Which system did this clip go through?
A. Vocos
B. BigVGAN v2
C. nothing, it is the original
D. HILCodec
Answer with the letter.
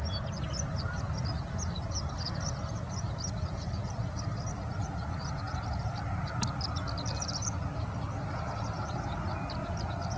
C